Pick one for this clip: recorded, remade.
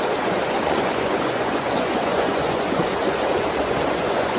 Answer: remade